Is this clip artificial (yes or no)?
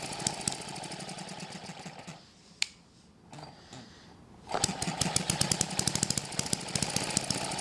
no